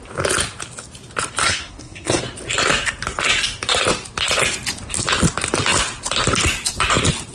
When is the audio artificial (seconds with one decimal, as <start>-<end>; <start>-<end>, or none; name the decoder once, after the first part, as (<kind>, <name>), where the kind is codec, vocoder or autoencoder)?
1.4-2.2 (codec, SNAC)